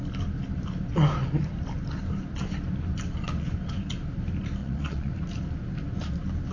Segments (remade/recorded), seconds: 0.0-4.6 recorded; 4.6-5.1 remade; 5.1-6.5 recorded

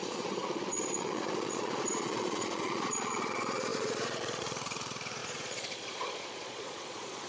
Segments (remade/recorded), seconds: 0.0-7.3 remade

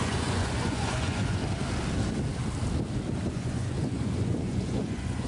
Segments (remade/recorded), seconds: 0.0-1.4 remade; 1.4-3.3 recorded; 3.3-5.3 remade